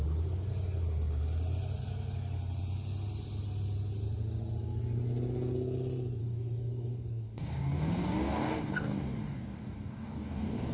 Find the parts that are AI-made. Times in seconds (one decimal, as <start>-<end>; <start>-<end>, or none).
6.2-10.7